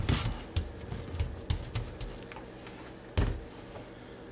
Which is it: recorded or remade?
recorded